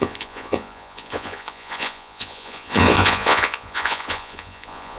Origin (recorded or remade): remade